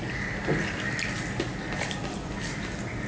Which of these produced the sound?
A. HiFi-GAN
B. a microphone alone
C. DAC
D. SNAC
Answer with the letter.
B